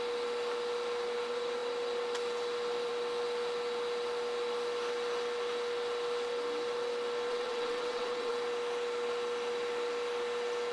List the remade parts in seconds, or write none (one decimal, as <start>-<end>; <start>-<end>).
7.3-8.3